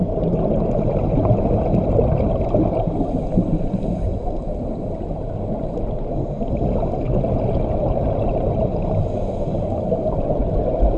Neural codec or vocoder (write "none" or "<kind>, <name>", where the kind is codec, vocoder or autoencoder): none